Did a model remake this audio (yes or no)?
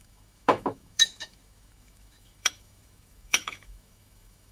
yes